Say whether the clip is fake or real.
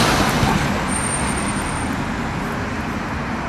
real